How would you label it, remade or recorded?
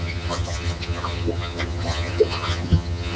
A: remade